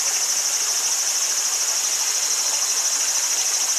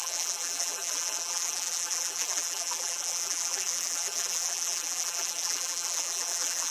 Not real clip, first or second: second